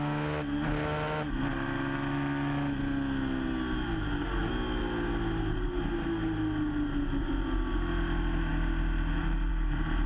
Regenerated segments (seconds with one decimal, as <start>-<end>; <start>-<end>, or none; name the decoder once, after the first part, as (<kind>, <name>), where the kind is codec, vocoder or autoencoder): none